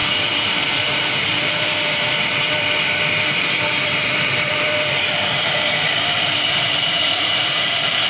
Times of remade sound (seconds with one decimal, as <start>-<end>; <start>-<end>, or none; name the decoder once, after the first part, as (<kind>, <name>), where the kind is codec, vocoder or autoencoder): 0.0-8.1 (vocoder, BigVGAN v2)